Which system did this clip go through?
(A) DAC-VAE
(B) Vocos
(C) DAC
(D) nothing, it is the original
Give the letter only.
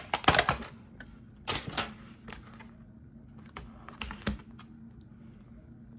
D